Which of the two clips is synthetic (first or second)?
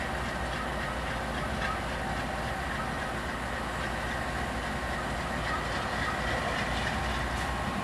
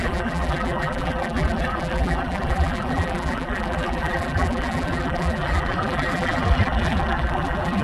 second